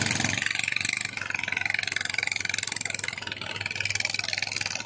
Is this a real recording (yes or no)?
yes